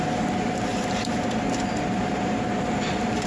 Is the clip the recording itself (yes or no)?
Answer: yes